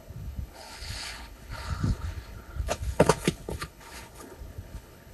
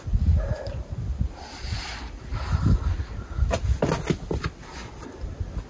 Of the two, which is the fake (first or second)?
first